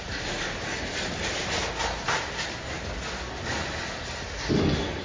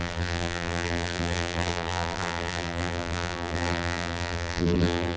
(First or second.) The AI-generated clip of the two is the second